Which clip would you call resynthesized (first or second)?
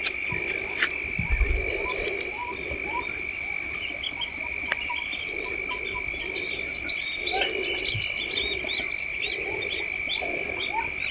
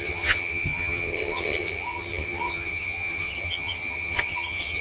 second